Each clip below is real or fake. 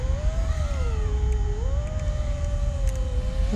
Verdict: real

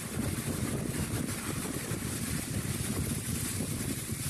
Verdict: real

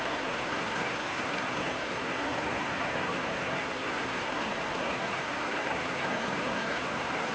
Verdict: fake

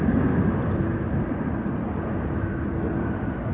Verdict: real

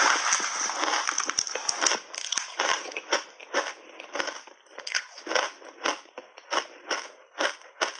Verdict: real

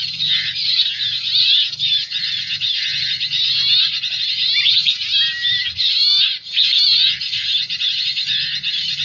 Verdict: real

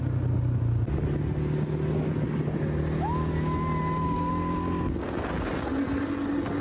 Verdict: real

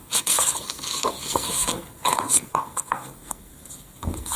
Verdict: fake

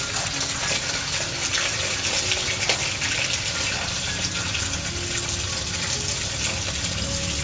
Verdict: real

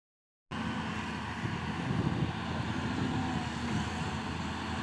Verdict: real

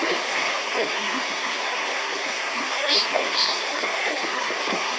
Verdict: fake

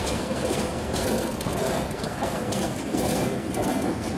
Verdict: fake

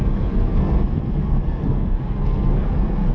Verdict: fake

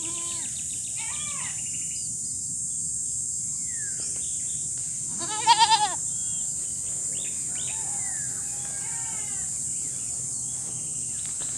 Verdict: real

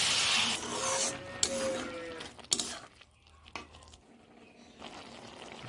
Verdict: real